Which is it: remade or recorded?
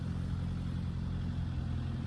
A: recorded